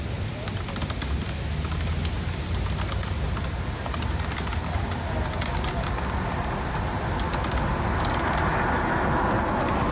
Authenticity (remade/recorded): recorded